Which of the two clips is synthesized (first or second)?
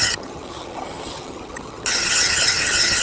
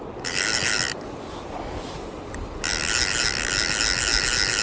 first